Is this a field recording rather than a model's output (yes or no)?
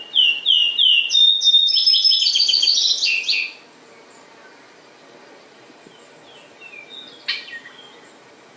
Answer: yes